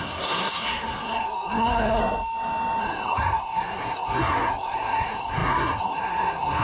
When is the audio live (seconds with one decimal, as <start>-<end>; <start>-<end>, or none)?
2.0-2.8